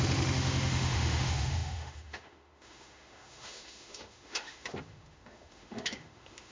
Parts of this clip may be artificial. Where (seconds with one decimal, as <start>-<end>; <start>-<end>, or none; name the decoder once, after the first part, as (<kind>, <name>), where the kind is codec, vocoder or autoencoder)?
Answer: 0.0-6.5 (autoencoder, DAC-VAE)